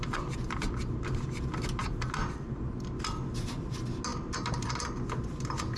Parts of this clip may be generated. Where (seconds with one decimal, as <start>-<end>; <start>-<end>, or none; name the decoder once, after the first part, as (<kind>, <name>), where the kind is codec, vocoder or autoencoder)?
none